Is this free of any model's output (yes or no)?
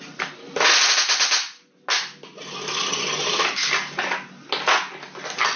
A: yes